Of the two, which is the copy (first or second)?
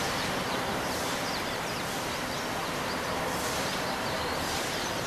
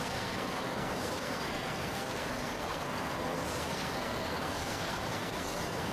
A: second